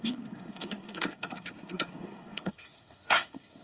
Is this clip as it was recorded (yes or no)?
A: no